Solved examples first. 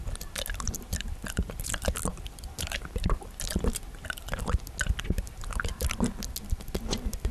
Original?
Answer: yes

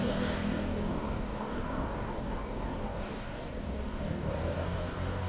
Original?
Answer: no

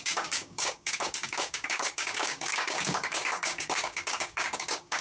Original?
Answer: no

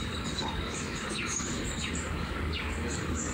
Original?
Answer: no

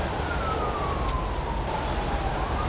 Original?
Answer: yes